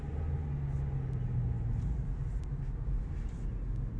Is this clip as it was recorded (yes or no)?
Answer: yes